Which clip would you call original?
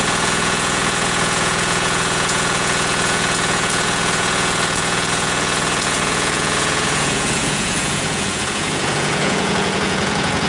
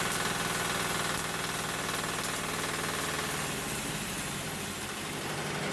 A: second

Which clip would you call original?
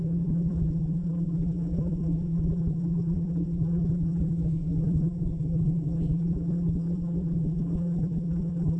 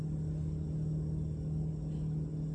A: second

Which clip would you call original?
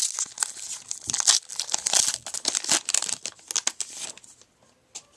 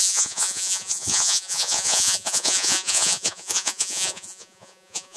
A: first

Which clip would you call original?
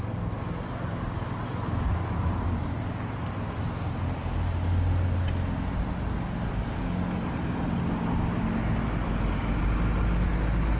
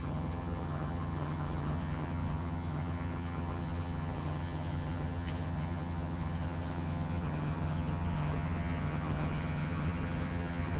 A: first